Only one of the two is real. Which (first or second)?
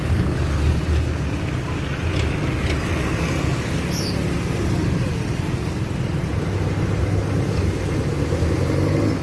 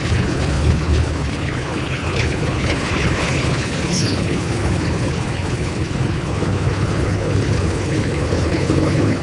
first